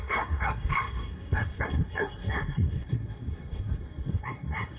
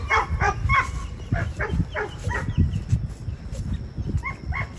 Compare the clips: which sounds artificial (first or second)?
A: first